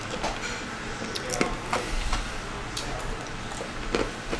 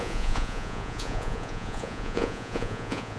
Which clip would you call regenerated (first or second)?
second